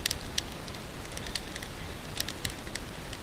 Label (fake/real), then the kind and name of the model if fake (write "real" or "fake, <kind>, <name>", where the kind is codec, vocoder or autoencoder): real